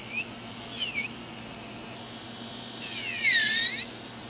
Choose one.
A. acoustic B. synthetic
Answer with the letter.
A